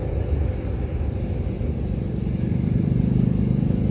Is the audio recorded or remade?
recorded